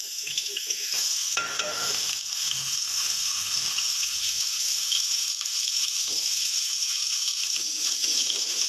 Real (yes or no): no